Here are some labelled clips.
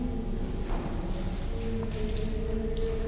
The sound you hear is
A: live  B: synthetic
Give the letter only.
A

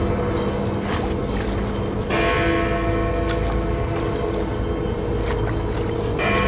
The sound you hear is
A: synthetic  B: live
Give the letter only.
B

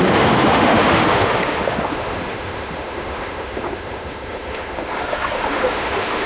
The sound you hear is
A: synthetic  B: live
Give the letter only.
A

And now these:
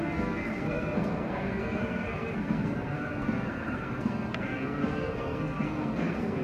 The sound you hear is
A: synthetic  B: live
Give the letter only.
A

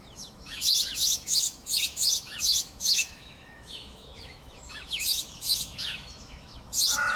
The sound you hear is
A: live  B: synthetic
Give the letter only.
B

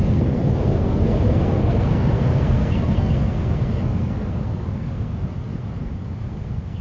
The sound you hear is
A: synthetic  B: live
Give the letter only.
A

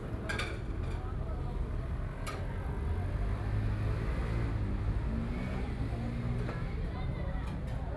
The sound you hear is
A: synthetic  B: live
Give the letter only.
B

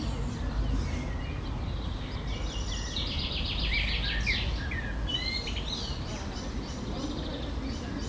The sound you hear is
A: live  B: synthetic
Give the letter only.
A